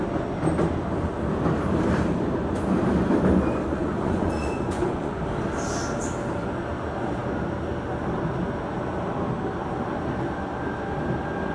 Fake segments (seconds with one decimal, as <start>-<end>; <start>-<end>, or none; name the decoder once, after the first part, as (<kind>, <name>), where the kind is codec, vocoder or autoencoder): 3.7-5.2 (vocoder, Vocos)